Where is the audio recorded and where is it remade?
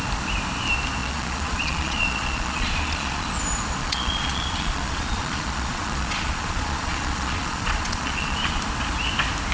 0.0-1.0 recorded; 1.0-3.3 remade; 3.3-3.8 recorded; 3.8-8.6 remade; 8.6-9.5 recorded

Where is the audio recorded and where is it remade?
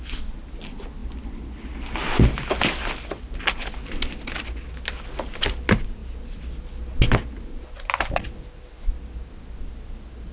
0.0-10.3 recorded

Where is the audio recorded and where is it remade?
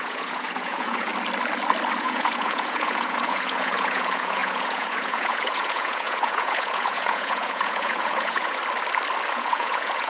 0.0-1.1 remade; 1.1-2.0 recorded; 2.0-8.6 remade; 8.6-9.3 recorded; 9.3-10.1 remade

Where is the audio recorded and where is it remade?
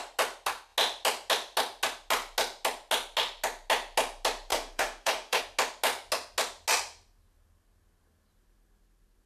0.0-4.5 recorded; 4.5-5.4 remade; 5.4-9.3 recorded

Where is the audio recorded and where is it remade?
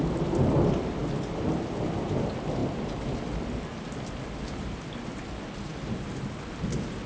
0.0-7.1 recorded